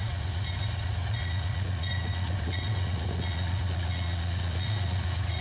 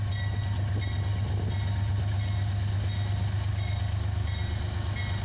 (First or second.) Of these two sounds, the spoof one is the first